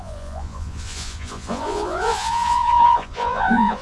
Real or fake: fake